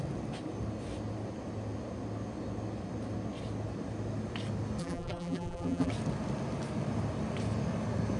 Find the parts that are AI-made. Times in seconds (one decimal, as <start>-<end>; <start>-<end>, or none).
4.8-5.9